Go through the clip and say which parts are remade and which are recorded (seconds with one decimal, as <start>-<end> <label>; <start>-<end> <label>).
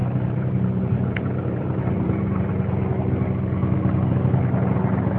0.0-2.5 remade; 2.5-5.2 recorded